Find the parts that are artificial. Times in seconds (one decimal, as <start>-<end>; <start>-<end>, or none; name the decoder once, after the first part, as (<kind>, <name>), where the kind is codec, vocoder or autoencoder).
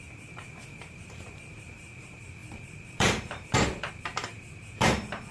0.0-5.3 (vocoder, BigVGAN v2)